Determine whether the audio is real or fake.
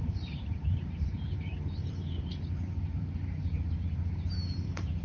fake